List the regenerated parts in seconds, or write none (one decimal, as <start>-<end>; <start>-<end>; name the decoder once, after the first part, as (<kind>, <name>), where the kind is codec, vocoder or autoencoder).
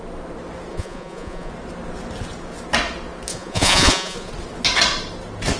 0.7-1.5 (vocoder, Vocos); 3.3-4.3